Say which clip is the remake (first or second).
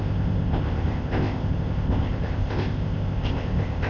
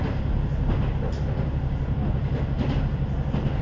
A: first